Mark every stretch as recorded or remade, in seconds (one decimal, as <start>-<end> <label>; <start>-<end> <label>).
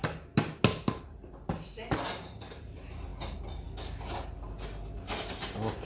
0.0-5.8 recorded